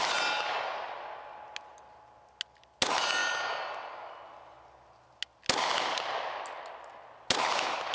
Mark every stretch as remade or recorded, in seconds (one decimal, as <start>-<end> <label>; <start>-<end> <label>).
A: 0.0-7.9 recorded